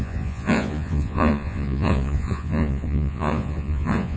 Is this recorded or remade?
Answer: remade